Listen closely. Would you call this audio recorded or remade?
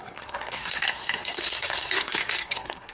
remade